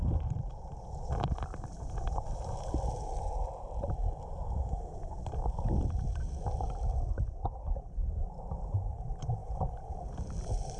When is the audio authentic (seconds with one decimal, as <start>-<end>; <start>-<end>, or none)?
0.0-10.8